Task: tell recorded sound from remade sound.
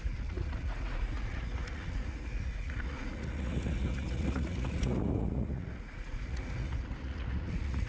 remade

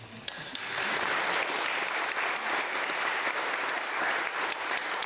recorded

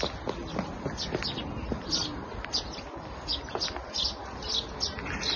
recorded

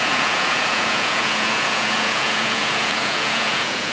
remade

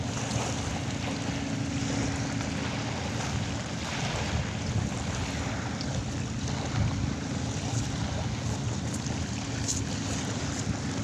recorded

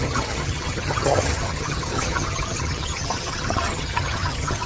remade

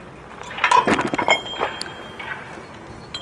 recorded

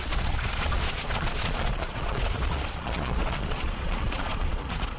remade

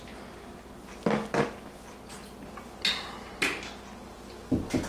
recorded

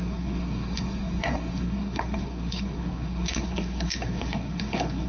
remade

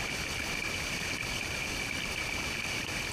recorded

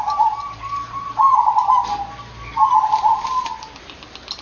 recorded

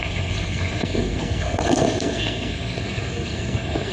remade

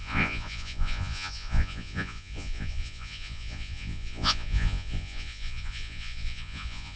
remade